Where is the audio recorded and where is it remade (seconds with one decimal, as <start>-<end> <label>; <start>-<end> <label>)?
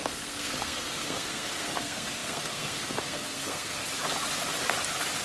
0.0-3.8 remade; 3.8-5.2 recorded